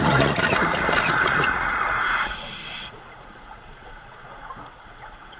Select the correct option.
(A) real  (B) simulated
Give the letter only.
B